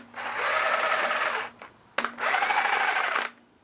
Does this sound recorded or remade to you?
recorded